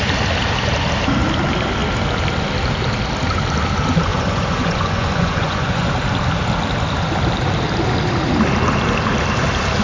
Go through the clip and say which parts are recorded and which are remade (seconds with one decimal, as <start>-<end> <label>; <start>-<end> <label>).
0.0-4.1 recorded; 4.1-5.9 remade; 5.9-9.8 recorded